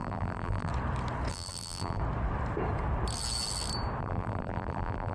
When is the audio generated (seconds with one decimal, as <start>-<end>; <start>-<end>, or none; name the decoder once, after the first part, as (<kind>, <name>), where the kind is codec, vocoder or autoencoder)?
0.0-0.7 (vocoder, BigVGAN v2); 1.3-2.0; 4.0-5.1